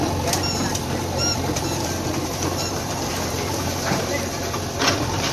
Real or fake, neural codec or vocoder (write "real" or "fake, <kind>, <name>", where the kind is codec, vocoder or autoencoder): fake, vocoder, BigVGAN v2